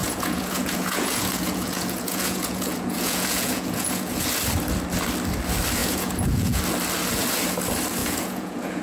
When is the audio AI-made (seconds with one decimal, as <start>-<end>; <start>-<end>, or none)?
0.0-4.3; 5.8-6.6; 8.0-8.8